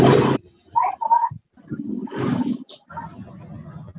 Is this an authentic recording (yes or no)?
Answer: yes